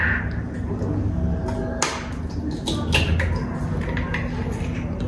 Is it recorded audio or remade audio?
recorded